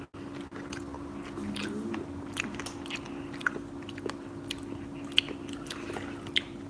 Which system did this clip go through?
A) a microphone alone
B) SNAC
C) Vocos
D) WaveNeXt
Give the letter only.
A